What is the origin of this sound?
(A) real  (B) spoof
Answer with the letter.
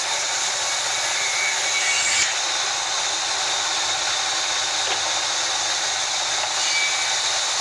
A